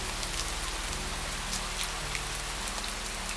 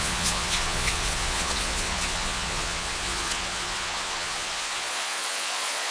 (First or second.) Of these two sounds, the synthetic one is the second